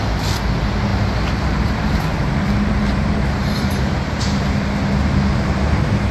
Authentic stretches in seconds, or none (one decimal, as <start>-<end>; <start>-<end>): 0.0-0.9; 4.6-6.1

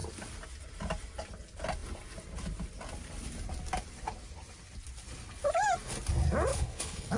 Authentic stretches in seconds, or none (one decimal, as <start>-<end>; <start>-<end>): 0.0-6.5

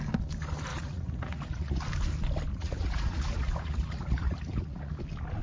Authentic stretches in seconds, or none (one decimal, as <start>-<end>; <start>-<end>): 0.0-0.7; 1.8-2.5; 4.9-5.4

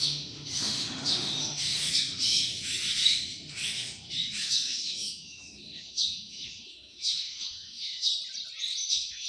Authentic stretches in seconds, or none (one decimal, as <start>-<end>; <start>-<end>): 8.1-8.9

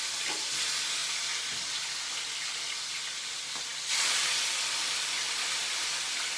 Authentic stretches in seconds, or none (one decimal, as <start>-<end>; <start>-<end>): 0.0-6.4

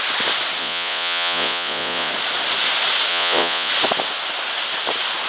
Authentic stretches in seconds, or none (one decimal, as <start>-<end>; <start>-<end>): 0.0-0.6; 2.1-3.1; 3.7-5.3

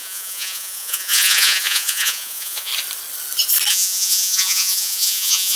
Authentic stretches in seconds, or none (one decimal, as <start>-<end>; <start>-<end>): 2.7-3.7